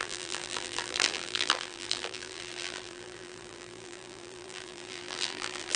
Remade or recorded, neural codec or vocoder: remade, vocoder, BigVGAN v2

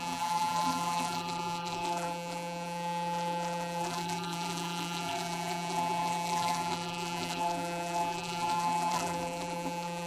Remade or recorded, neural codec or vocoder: remade, vocoder, BigVGAN v2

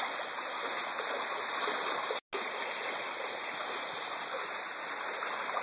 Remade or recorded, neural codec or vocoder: recorded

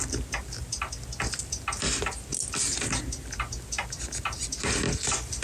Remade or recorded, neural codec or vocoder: recorded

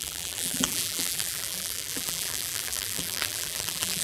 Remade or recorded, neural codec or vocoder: remade, vocoder, BigVGAN v2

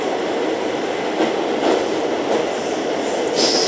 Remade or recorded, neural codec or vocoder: recorded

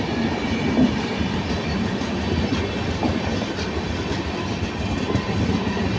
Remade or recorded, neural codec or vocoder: recorded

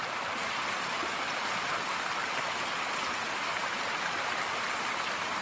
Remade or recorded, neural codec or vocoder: recorded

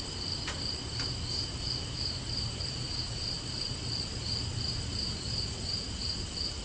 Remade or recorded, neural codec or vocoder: remade, vocoder, BigVGAN v2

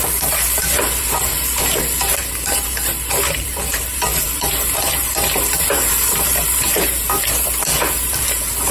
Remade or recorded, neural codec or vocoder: remade, vocoder, BigVGAN v2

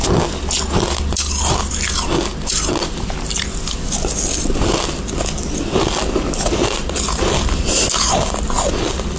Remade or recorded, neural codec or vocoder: recorded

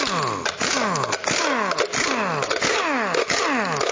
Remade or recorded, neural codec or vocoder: recorded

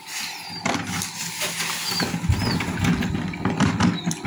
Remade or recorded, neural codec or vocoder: recorded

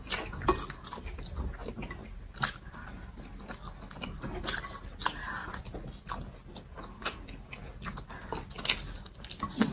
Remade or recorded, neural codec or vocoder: recorded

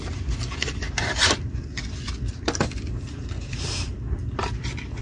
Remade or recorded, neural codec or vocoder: remade, vocoder, BigVGAN v2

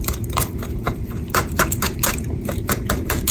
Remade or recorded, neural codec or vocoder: remade, vocoder, BigVGAN v2